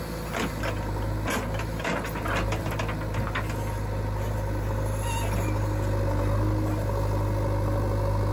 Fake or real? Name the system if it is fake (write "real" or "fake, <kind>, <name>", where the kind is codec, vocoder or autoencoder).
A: real